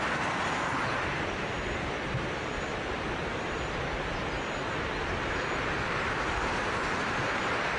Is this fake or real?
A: real